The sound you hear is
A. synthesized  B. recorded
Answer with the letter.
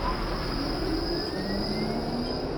B